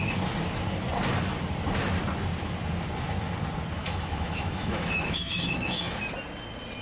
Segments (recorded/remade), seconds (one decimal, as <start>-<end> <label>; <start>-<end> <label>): 0.0-3.8 recorded; 3.8-6.0 remade; 6.0-6.8 recorded